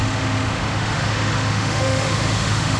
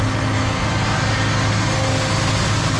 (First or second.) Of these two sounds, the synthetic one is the first